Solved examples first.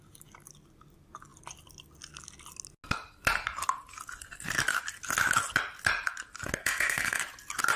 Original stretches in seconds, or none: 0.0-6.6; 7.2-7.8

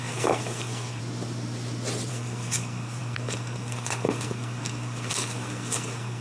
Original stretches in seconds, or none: 1.0-2.1

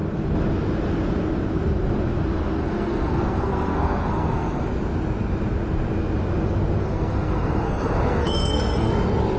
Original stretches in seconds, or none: 0.0-2.6; 4.6-6.8; 8.9-9.4

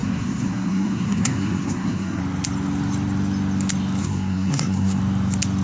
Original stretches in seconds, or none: 2.2-4.0; 5.0-5.6

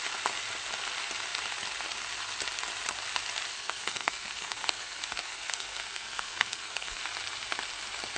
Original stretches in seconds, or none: 0.0-3.5; 7.0-8.2

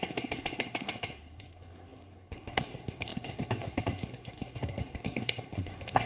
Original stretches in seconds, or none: none